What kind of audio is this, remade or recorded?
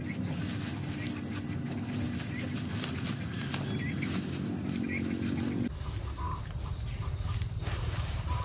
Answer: recorded